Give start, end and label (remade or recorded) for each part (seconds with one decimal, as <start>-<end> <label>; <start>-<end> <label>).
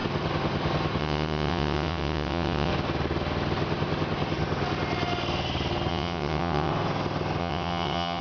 0.0-1.0 recorded; 1.0-2.7 remade; 2.7-5.9 recorded; 5.9-6.7 remade; 6.7-7.4 recorded; 7.4-8.2 remade